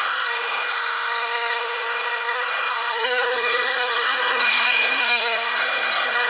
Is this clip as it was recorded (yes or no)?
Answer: no